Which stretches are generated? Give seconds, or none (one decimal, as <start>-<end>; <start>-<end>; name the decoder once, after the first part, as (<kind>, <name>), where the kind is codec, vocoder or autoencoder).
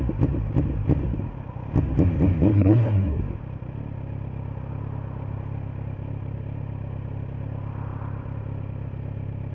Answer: 2.5-3.2 (codec, SNAC)